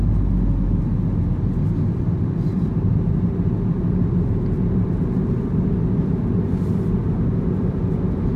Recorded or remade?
recorded